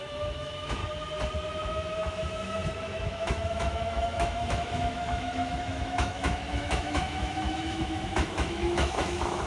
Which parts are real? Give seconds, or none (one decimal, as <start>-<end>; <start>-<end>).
0.8-1.5